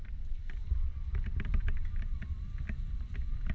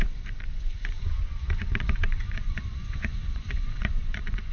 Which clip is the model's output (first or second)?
second